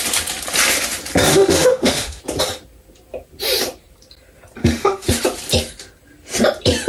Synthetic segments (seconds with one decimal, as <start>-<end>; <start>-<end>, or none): 1.3-2.2; 4.6-5.1